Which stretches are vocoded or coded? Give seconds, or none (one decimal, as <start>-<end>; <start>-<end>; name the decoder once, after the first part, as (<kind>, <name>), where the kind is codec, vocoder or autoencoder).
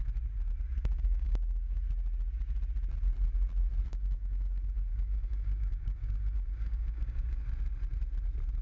0.8-1.8 (codec, DAC); 3.9-7.4